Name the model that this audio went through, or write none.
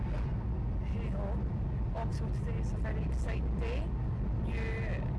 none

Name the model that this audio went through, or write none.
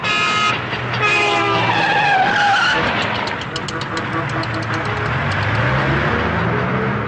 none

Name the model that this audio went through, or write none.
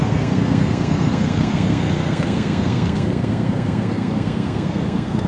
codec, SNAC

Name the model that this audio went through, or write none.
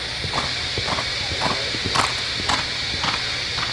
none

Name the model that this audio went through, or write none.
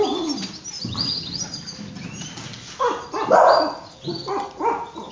none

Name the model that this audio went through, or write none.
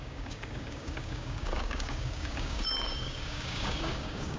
codec, DAC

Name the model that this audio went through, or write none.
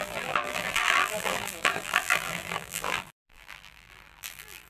vocoder, BigVGAN v2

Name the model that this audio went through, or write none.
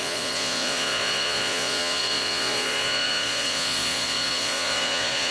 vocoder, Vocos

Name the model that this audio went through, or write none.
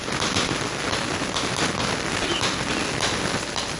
none